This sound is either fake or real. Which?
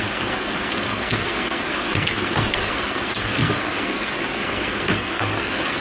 fake